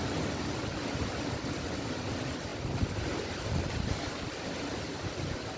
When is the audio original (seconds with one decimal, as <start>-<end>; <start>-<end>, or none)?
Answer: 0.0-5.6